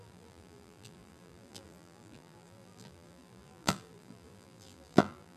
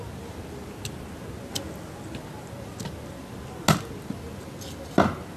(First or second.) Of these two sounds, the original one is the second